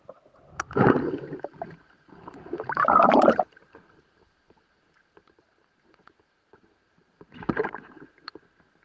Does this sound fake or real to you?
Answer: fake